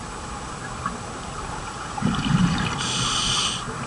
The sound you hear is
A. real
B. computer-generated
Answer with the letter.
A